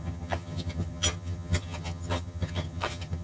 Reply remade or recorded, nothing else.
remade